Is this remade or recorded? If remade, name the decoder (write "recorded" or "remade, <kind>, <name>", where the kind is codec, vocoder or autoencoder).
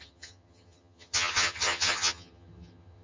remade, vocoder, HiFi-GAN